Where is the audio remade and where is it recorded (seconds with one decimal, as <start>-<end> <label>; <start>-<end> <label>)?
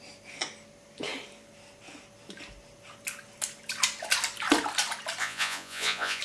0.0-5.2 recorded; 5.2-6.2 remade